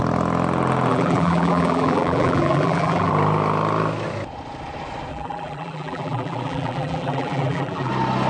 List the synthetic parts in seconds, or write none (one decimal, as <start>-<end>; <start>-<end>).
0.9-3.1; 5.1-7.9